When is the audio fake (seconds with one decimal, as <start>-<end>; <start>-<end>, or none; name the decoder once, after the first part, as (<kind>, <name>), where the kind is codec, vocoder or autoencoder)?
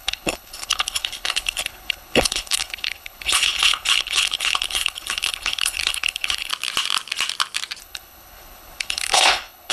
0.0-6.5 (codec, HILCodec); 7.8-9.7